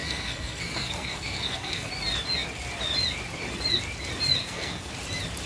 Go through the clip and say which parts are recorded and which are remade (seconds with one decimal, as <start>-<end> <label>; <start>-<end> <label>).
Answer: 0.0-1.9 remade; 1.9-4.4 recorded; 4.4-4.9 remade; 4.9-5.5 recorded